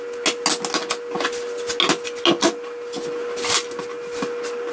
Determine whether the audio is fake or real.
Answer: real